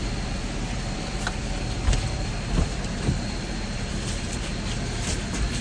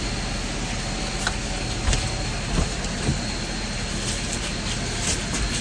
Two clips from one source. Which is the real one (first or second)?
second